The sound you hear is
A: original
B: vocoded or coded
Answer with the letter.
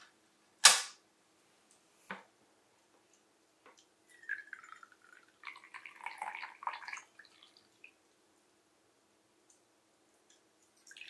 A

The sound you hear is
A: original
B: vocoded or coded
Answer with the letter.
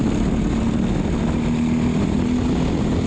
A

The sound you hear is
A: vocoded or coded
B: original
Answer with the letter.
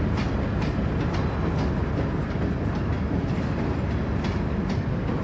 B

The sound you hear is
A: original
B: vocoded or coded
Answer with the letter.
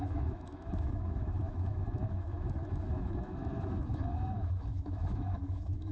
B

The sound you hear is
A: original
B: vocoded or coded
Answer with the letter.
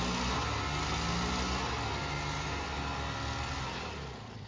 A